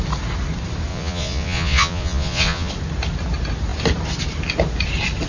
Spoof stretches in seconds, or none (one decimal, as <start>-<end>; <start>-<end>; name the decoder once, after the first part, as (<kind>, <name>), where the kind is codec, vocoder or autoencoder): 0.9-2.7 (vocoder, Vocos)